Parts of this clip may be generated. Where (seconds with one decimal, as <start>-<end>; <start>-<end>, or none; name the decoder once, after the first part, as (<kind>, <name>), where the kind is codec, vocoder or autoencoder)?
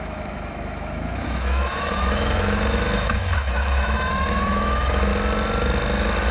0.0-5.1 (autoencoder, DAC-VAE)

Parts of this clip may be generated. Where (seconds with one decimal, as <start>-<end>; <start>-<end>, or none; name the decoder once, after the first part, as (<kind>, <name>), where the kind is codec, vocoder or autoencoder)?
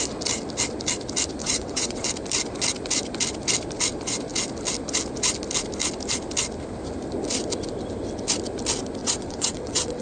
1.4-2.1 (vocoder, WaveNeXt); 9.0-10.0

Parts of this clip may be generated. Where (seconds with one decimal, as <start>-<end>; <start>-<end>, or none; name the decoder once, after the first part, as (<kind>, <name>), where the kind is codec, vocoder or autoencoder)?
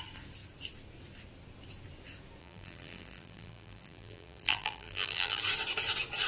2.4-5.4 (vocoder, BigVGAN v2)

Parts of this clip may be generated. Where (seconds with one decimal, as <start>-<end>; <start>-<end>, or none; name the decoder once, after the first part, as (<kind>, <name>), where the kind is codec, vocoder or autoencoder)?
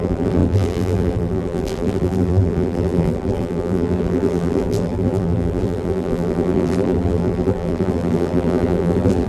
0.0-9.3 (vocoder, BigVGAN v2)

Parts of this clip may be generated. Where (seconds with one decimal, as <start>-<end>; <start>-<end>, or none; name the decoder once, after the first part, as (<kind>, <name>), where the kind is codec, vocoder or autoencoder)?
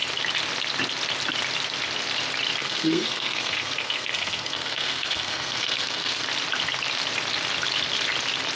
2.6-6.2 (codec, SNAC)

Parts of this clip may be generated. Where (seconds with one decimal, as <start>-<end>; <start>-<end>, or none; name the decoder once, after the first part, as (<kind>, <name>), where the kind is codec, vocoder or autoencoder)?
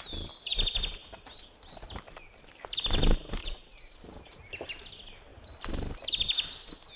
3.4-4.0 (vocoder, Vocos)